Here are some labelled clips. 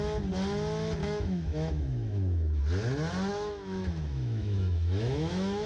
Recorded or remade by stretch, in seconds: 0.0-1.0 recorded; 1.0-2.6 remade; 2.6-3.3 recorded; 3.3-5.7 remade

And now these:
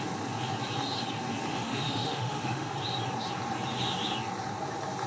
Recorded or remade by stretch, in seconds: 0.0-1.5 recorded; 1.5-2.7 remade; 2.7-5.1 recorded

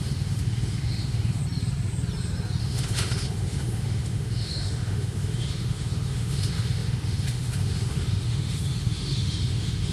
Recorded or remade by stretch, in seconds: 0.0-1.4 remade; 1.4-2.6 recorded; 2.6-9.9 remade